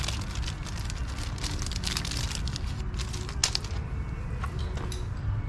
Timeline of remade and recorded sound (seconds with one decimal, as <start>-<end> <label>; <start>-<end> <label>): 0.0-5.5 recorded